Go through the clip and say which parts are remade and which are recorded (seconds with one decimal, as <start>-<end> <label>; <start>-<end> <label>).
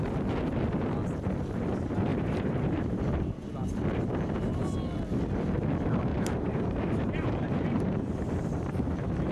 0.0-2.1 recorded; 2.1-3.0 remade; 3.0-6.1 recorded; 6.1-9.3 remade